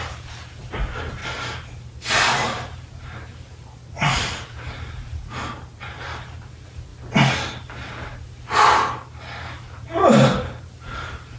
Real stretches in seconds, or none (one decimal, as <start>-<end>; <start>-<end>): 6.9-9.7

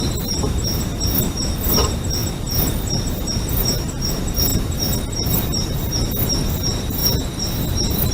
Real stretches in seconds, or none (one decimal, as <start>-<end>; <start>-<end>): 0.0-4.5; 6.5-8.1

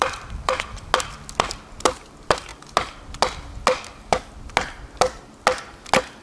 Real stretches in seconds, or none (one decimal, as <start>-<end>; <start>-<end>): 0.9-6.2

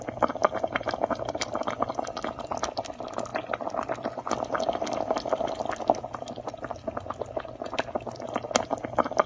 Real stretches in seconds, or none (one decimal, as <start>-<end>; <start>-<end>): 0.0-0.4; 2.6-3.3; 7.2-9.3

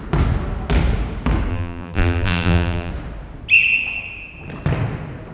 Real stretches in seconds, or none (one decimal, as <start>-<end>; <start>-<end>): 0.0-1.5; 2.9-5.3